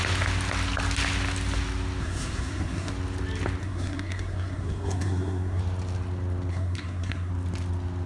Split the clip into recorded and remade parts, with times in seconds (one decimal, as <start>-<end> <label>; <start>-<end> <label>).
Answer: 0.0-2.0 recorded; 2.0-2.9 remade; 2.9-3.6 recorded; 3.6-5.6 remade; 5.6-6.5 recorded; 6.5-7.3 remade; 7.3-8.1 recorded